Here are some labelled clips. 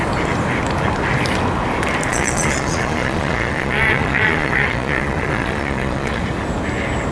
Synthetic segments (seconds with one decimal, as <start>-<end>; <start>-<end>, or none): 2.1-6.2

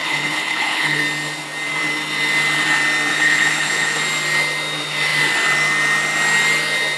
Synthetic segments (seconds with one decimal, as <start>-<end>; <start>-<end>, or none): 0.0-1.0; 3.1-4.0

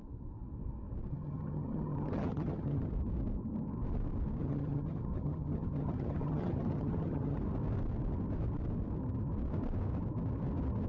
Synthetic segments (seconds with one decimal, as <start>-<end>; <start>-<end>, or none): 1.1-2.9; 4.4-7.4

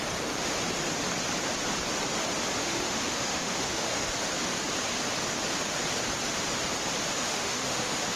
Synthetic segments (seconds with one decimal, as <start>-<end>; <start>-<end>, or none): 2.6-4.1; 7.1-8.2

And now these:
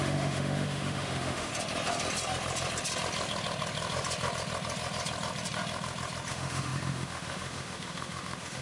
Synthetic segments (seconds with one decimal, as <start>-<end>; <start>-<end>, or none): 0.0-1.5; 6.3-8.6

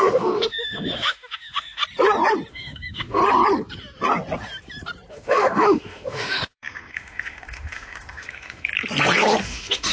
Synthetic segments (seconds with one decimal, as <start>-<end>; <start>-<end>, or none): 0.0-1.8; 2.5-3.2; 5.1-8.7; 9.4-9.9

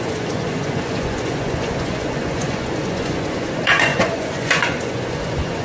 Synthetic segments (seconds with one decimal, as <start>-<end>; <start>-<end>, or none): 0.0-5.6